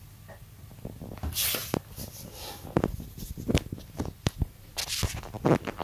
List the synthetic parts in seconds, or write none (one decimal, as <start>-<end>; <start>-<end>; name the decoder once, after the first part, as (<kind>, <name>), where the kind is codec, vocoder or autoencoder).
none